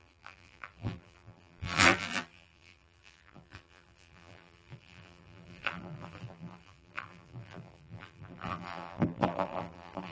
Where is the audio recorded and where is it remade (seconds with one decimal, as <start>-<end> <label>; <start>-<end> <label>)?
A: 0.0-10.1 remade